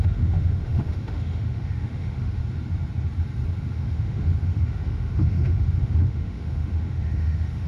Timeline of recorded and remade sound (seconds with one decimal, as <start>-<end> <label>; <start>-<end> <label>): 0.0-2.4 remade; 2.4-3.6 recorded; 3.6-7.7 remade